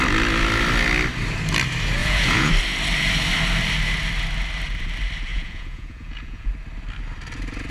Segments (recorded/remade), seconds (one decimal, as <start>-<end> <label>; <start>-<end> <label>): 0.0-2.0 recorded; 2.0-2.5 remade; 2.5-5.3 recorded; 5.3-6.5 remade; 6.5-7.7 recorded